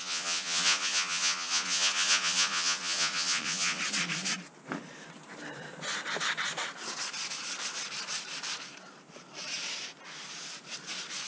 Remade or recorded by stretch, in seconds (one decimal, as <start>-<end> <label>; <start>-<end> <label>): 0.0-3.8 remade; 3.8-11.3 recorded